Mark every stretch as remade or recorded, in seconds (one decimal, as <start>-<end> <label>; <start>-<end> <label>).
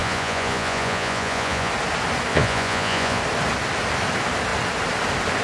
0.0-1.7 remade; 1.7-2.3 recorded; 2.3-3.2 remade; 3.2-5.4 recorded